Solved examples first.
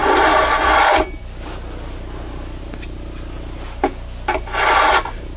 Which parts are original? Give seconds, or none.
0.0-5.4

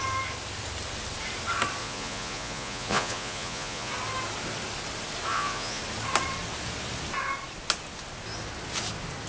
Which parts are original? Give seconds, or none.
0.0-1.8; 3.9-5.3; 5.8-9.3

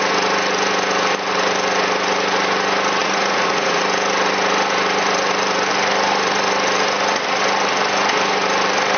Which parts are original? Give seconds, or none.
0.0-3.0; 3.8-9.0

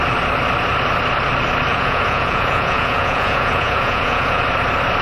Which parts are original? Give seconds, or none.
0.0-1.7; 4.4-5.0

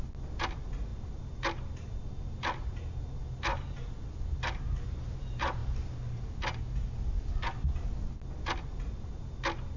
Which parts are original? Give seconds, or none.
0.0-9.8

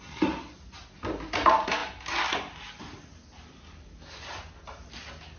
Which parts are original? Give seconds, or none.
0.0-5.4

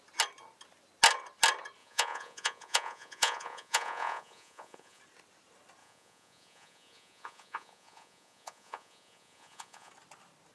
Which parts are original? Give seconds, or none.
0.0-1.8; 5.0-5.8; 9.9-10.5

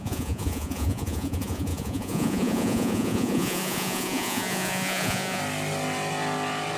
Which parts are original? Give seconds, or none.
5.4-6.8